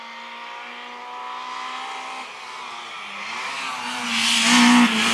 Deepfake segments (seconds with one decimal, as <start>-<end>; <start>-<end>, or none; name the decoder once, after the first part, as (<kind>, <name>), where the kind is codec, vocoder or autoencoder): none